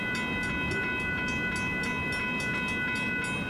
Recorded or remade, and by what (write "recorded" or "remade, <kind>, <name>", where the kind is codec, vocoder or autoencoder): recorded